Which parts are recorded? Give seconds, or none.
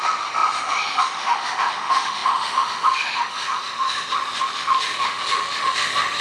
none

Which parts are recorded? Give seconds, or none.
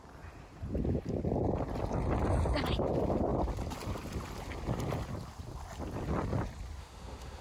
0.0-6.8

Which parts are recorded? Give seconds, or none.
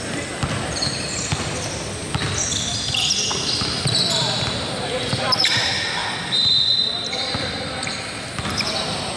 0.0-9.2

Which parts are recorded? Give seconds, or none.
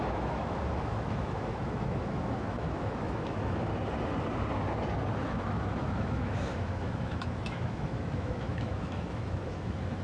3.7-5.2